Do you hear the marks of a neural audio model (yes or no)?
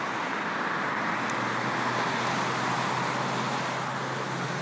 no